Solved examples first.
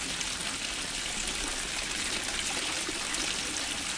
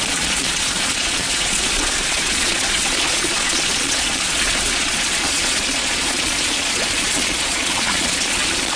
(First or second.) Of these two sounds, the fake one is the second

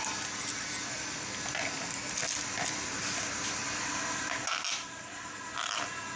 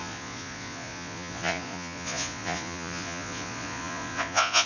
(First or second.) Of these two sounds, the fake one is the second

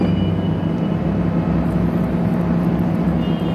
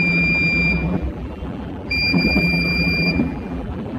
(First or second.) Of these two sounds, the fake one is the second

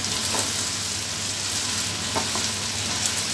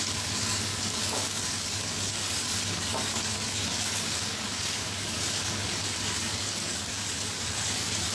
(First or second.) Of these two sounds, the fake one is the second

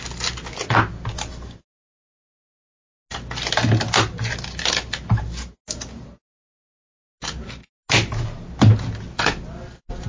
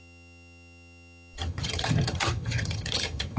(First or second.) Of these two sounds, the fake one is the second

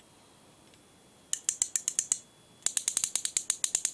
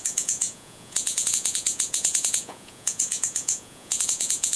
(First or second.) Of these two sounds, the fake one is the second